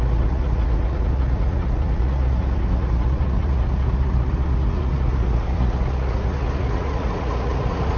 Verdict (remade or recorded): remade